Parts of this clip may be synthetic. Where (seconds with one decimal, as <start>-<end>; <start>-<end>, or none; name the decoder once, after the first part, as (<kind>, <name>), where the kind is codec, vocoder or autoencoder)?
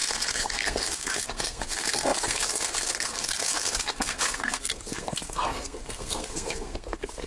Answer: 0.0-7.3 (codec, SNAC)